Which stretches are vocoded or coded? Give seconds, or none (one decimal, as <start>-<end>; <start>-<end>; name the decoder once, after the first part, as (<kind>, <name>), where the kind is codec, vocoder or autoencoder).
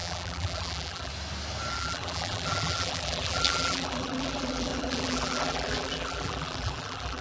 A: 0.0-1.1 (vocoder, BigVGAN v2); 1.7-7.2